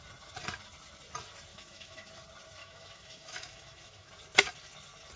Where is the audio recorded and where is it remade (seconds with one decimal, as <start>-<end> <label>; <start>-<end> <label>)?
0.0-1.5 recorded; 1.5-2.1 remade; 2.1-2.6 recorded; 2.6-4.1 remade; 4.1-5.2 recorded